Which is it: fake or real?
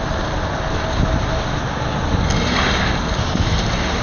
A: real